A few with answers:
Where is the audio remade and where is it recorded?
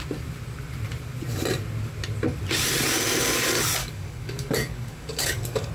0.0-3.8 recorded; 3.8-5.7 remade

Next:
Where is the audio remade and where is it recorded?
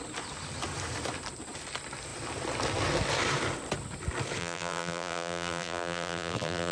0.0-4.4 recorded; 4.4-6.7 remade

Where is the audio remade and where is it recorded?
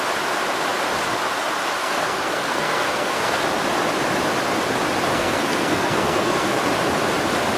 0.0-1.8 recorded; 1.8-3.4 remade; 3.4-5.1 recorded; 5.1-6.7 remade; 6.7-7.6 recorded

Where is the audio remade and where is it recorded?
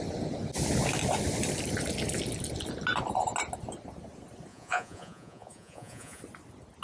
0.0-4.5 recorded; 4.5-6.2 remade; 6.2-6.8 recorded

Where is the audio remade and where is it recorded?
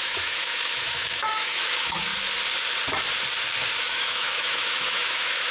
0.0-2.1 remade; 2.1-3.8 recorded; 3.8-5.5 remade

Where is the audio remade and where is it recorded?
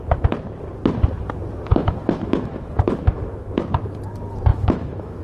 0.0-1.7 recorded; 1.7-3.6 remade; 3.6-4.5 recorded; 4.5-5.2 remade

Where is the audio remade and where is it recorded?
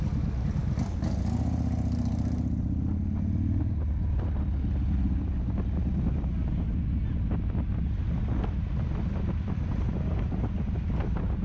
0.0-11.4 recorded